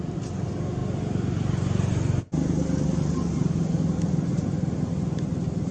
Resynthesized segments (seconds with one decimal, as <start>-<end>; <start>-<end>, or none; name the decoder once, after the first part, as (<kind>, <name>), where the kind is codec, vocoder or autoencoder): none